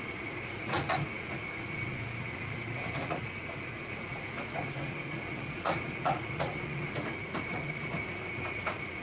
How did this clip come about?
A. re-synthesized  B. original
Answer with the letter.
A